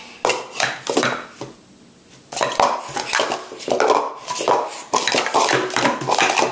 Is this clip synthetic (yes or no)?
no